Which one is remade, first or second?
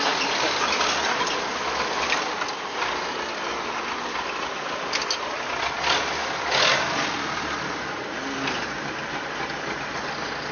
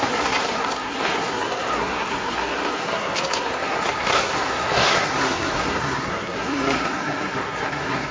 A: second